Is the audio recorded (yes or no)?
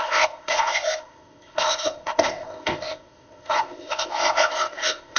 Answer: no